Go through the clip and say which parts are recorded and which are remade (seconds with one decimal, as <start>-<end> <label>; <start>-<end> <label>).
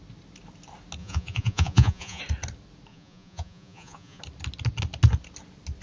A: 0.0-1.0 recorded; 1.0-2.2 remade; 2.2-2.9 recorded; 2.9-4.2 remade; 4.2-5.8 recorded